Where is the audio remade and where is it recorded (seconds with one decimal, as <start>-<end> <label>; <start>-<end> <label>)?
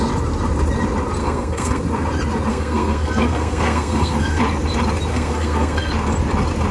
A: 0.0-1.2 recorded; 1.2-1.8 remade; 1.8-2.5 recorded; 2.5-4.4 remade; 4.4-5.1 recorded; 5.1-5.9 remade; 5.9-6.7 recorded